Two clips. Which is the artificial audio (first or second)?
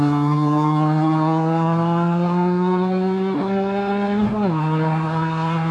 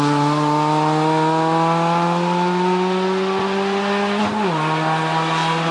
first